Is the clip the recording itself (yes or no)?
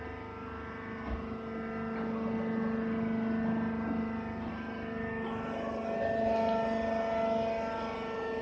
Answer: yes